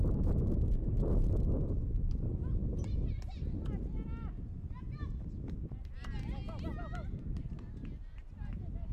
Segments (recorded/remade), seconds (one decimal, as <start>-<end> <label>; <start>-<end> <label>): 0.0-8.9 recorded